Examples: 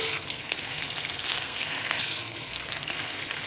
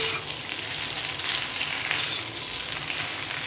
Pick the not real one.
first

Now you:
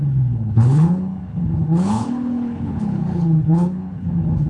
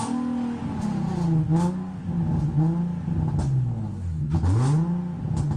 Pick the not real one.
first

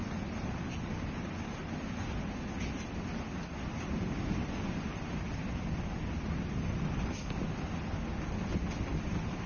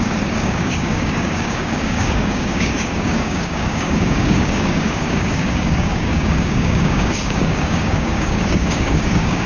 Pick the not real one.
second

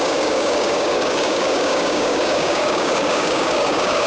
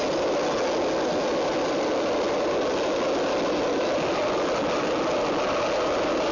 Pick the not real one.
first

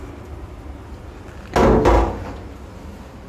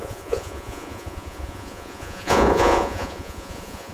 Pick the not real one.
second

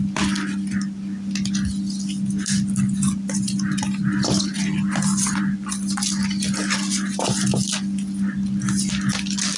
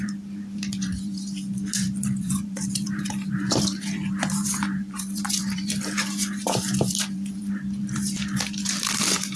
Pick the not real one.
second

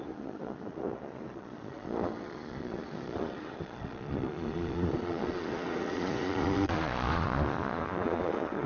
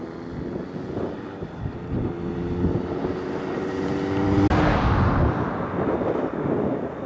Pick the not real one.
first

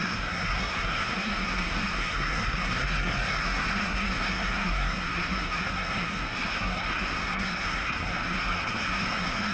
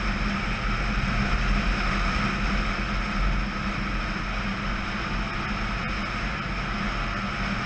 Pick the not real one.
first